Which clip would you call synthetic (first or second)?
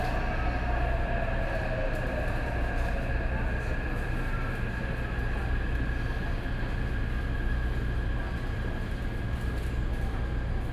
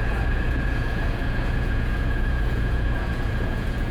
second